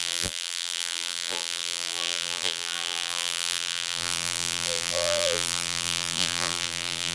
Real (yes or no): no